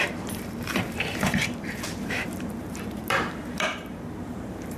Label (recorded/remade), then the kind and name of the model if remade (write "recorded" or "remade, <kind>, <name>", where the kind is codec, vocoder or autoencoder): remade, vocoder, BigVGAN v2